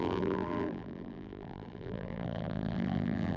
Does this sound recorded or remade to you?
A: remade